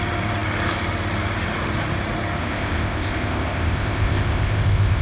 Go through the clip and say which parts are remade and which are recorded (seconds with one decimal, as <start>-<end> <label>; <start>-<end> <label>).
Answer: 0.0-2.4 recorded; 2.4-5.0 remade